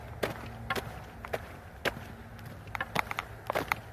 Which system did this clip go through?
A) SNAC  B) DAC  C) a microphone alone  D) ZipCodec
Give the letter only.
C